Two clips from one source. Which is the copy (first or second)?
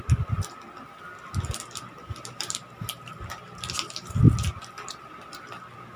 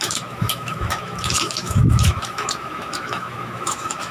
second